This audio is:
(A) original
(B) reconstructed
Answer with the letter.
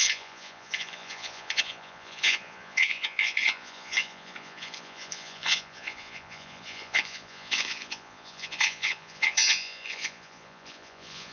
B